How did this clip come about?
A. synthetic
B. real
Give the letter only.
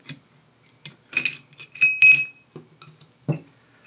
B